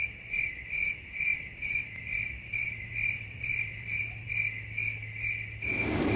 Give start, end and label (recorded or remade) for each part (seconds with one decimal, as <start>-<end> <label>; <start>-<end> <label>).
0.0-1.3 recorded; 1.3-4.3 remade; 4.3-6.2 recorded

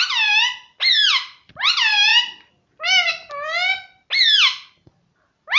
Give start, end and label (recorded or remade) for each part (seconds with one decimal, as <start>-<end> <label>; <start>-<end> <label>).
0.0-5.6 recorded